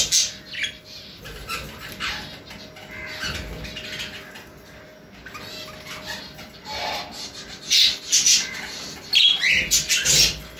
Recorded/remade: recorded